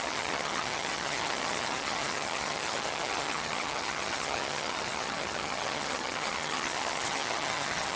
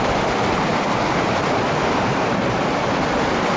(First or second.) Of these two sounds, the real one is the second